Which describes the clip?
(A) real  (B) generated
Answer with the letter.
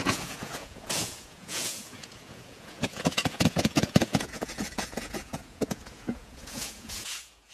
B